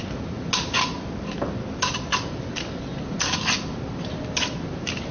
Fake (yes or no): no